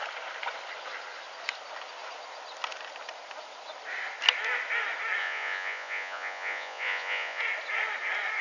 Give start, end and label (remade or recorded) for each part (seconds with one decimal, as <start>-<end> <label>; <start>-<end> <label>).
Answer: 0.0-5.2 recorded; 5.2-7.4 remade; 7.4-8.4 recorded